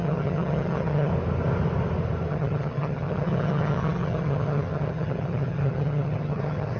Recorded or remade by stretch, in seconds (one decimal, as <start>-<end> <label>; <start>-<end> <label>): 0.0-1.1 remade; 1.1-2.3 recorded; 2.3-6.8 remade